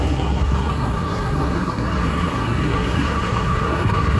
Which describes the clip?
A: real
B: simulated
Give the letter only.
B